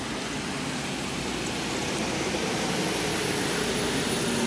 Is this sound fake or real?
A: real